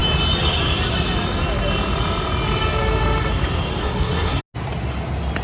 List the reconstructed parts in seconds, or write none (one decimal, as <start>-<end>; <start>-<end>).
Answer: 3.8-4.4